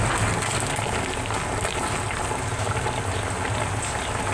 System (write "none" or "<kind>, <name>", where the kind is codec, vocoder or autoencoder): none